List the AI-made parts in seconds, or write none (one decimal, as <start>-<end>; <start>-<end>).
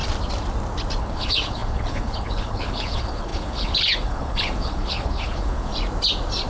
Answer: 1.0-5.7